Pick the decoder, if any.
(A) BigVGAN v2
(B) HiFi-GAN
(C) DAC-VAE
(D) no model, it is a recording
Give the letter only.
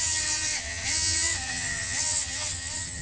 B